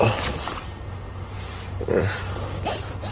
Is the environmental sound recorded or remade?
recorded